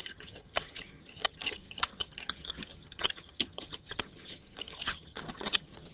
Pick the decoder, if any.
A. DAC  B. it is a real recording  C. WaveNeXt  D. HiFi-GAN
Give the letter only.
D